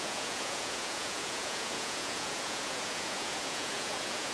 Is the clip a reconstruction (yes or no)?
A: yes